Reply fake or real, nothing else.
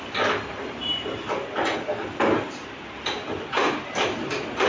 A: fake